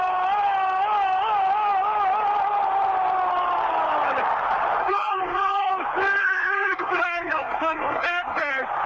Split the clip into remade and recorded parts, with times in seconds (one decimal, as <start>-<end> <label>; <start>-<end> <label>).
0.0-4.8 recorded; 4.8-5.7 remade; 5.7-6.2 recorded; 6.2-8.5 remade; 8.5-8.9 recorded